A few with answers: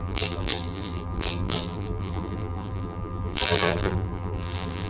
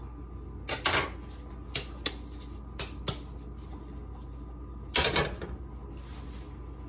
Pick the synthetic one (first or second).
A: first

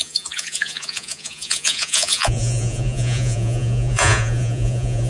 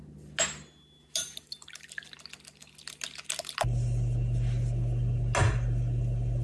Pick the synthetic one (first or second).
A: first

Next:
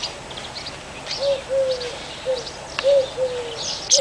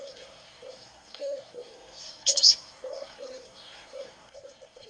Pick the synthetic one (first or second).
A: second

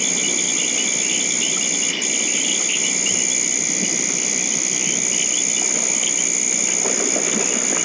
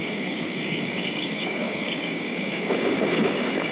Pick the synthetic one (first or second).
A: second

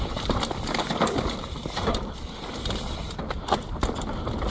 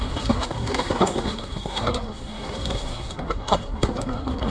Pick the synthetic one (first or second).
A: second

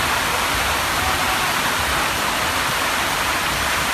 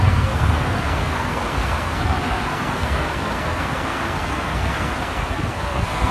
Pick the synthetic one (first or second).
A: second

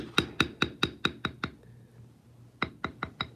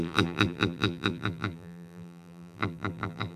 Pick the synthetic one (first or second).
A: second